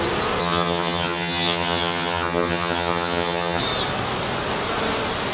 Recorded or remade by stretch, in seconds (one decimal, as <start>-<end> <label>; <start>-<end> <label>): 0.0-0.4 recorded; 0.4-3.6 remade; 3.6-5.3 recorded